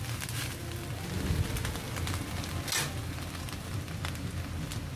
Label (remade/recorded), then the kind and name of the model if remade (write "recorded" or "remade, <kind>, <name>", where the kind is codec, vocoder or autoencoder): recorded